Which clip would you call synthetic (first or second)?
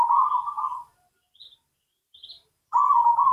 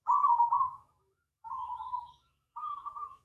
second